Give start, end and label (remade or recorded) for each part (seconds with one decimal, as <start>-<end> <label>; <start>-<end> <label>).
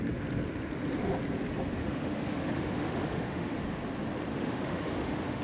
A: 0.0-1.8 recorded; 1.8-3.6 remade; 3.6-4.3 recorded; 4.3-5.4 remade